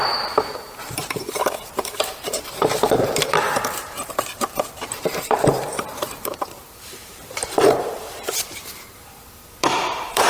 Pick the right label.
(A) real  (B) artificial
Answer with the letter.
B